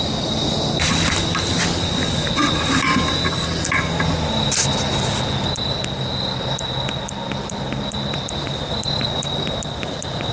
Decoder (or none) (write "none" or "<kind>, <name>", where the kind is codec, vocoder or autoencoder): none